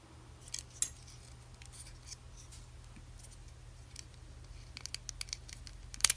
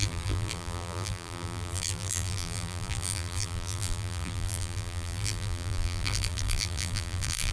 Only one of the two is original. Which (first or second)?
first